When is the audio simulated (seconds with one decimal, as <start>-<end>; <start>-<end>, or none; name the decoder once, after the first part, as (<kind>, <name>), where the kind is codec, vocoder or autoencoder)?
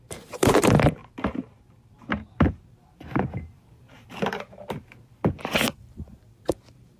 0.0-4.6 (vocoder, BigVGAN v2); 5.8-7.0